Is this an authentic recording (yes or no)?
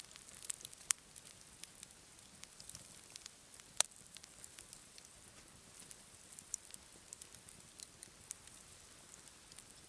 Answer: no